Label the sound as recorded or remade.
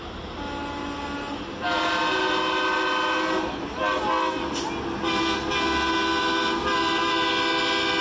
recorded